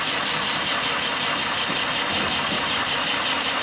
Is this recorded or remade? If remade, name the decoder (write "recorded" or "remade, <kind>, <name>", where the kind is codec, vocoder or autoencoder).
remade, vocoder, BigVGAN v2